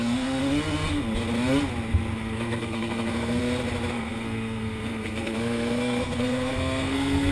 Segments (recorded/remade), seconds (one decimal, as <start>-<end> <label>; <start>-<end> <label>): 0.0-0.4 remade; 0.4-2.2 recorded; 2.2-3.4 remade; 3.4-3.9 recorded; 3.9-7.3 remade